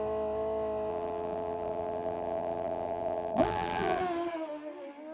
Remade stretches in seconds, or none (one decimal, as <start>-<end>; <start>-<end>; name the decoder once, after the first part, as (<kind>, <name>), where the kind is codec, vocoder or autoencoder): 0.9-4.0 (vocoder, BigVGAN v2)